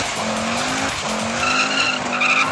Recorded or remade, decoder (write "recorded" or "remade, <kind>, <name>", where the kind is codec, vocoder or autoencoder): recorded